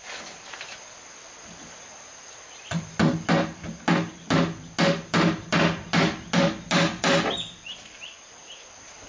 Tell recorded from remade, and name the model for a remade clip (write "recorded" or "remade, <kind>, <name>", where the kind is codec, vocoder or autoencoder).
recorded